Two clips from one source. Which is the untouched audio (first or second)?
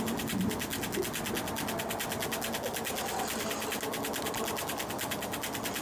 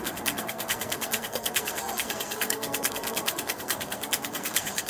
first